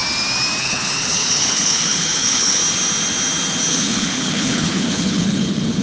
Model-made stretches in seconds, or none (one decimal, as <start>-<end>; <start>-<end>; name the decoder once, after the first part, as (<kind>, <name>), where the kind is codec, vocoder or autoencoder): 0.6-2.6 (codec, HILCodec); 3.7-5.8